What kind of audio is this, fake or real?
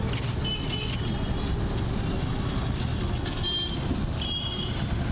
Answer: real